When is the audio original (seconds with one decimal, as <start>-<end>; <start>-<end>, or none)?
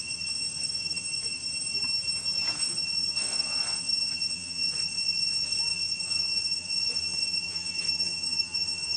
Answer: 1.4-2.6